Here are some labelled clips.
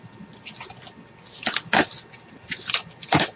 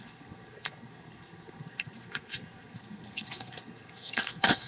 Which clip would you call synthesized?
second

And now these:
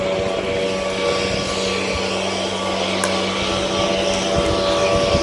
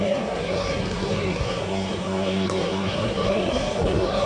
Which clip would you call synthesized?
second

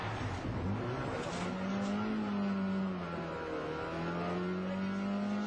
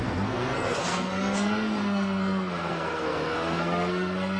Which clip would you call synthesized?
second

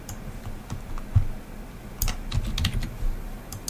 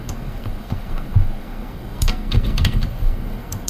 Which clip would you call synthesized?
second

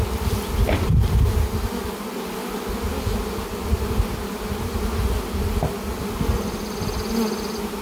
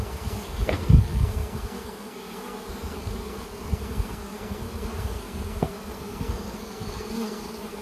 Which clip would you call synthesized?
second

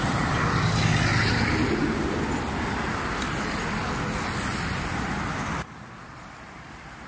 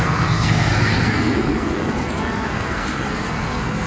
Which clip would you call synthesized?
second